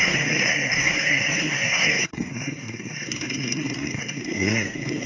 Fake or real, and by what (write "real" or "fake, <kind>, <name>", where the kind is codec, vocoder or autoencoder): fake, codec, SNAC